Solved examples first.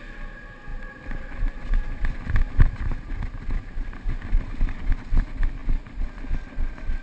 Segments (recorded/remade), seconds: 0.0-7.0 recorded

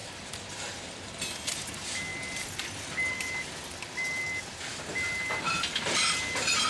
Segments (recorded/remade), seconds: 0.0-6.7 recorded

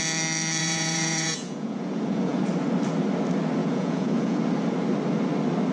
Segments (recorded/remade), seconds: 0.0-0.6 recorded; 0.6-2.4 remade; 2.4-3.6 recorded; 3.6-4.4 remade; 4.4-5.7 recorded

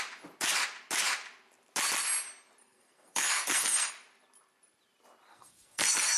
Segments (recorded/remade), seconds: 0.0-2.6 recorded; 2.6-3.9 remade; 3.9-5.3 recorded; 5.3-6.2 remade